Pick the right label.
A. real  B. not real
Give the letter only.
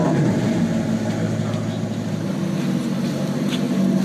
A